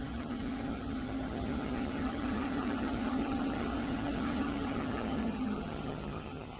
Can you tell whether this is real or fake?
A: fake